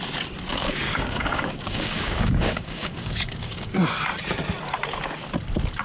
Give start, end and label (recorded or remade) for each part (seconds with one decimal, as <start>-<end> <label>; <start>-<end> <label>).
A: 0.0-0.5 recorded; 0.5-3.9 remade; 3.9-5.8 recorded